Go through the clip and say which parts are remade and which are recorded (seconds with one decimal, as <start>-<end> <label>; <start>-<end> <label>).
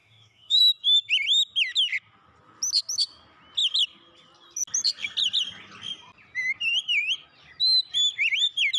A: 0.0-0.6 remade; 0.6-8.8 recorded